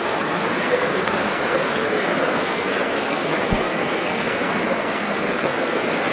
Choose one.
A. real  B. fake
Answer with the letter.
B